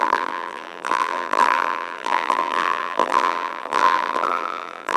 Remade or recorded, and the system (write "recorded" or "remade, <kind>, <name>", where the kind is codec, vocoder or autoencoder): remade, vocoder, BigVGAN v2